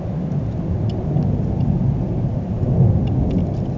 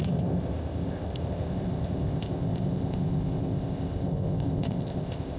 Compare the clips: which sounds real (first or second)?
first